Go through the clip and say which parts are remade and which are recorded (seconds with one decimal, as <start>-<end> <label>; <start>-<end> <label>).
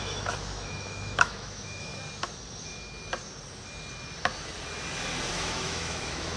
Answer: 0.0-1.9 remade; 1.9-5.3 recorded; 5.3-6.4 remade